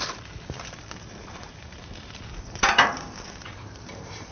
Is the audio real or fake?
fake